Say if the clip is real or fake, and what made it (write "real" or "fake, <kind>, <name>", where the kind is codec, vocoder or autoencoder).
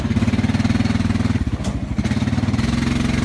real